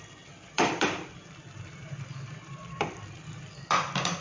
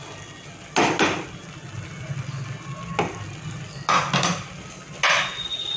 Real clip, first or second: second